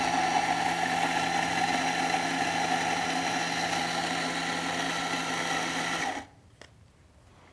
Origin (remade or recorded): recorded